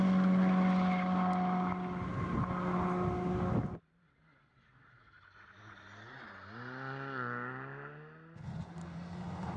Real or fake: real